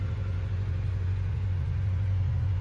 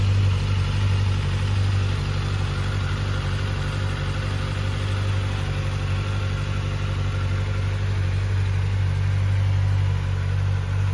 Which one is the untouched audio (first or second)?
second